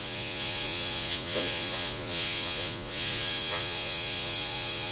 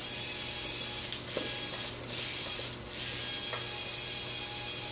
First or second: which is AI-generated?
first